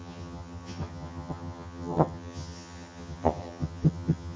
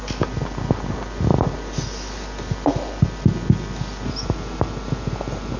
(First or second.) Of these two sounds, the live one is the second